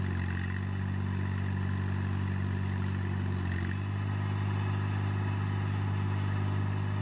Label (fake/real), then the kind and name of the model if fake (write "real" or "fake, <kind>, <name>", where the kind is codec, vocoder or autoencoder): real